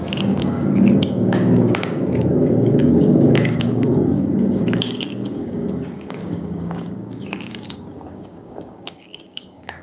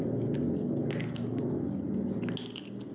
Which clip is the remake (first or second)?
first